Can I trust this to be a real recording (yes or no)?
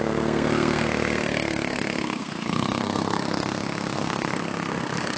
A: no